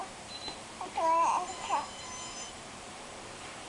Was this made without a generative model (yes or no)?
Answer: no